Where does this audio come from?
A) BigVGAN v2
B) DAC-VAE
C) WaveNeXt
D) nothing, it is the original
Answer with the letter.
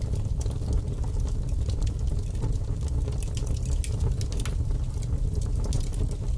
D